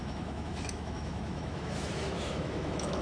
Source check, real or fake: fake